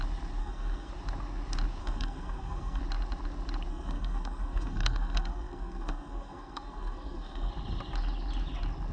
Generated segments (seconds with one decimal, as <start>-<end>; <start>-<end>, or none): 0.4-0.9; 1.8-2.8; 3.7-7.5